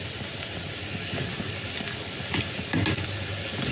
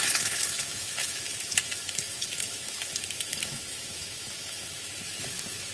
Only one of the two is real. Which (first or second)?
first